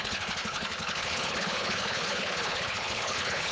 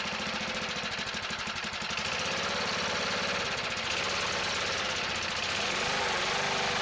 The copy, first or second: first